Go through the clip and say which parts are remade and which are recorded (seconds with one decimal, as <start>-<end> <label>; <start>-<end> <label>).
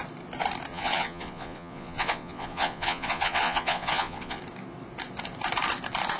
0.0-0.7 recorded; 0.7-4.4 remade; 4.4-6.2 recorded